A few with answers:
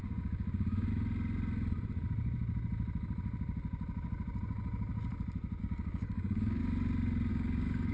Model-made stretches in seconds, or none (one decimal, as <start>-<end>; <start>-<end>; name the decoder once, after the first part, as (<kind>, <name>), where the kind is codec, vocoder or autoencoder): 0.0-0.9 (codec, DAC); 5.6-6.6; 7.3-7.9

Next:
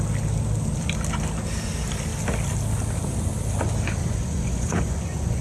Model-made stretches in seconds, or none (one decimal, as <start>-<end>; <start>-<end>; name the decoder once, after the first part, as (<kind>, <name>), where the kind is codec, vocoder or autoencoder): 4.0-5.4 (vocoder, Vocos)

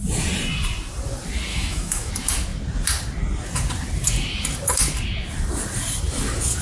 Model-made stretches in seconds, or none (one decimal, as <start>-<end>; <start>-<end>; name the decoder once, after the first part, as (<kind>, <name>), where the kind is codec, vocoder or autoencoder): 1.5-2.1 (autoencoder, DAC-VAE)